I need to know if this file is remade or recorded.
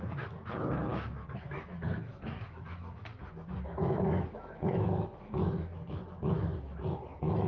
remade